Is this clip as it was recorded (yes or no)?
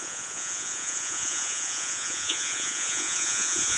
no